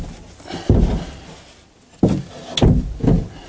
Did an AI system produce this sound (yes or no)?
no